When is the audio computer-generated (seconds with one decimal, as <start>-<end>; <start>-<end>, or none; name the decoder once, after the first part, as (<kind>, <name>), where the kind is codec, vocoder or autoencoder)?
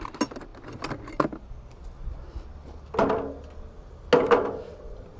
none